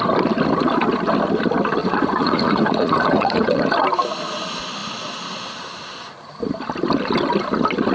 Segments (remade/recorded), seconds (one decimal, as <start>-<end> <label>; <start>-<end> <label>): 0.0-1.8 recorded; 1.8-3.6 remade; 3.6-7.9 recorded